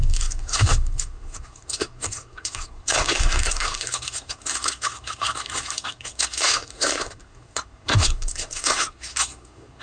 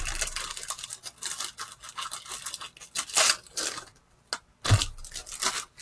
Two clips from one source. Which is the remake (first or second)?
first